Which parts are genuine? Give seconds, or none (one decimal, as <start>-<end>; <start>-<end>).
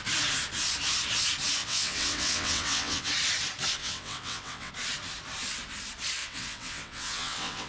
0.0-1.6; 3.1-3.8; 4.7-6.2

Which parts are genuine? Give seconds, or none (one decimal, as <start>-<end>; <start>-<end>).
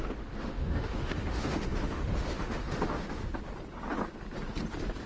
3.2-5.1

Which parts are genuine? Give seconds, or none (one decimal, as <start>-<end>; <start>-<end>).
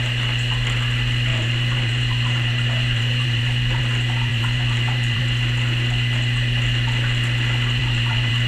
0.0-1.3; 3.8-4.3; 5.2-7.8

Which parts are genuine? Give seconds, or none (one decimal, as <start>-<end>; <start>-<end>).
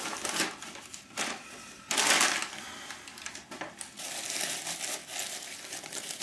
0.0-6.2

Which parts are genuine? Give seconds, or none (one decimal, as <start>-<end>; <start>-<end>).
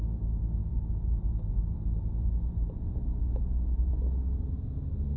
0.0-0.6; 2.9-5.2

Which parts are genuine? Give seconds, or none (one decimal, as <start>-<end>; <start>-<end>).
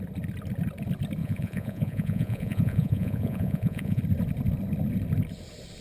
0.0-1.2; 4.0-5.8